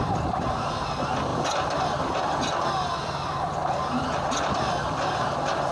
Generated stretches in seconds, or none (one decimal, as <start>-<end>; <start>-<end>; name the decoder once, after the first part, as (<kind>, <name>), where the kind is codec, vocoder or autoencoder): none